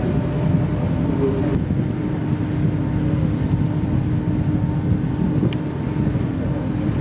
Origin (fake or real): real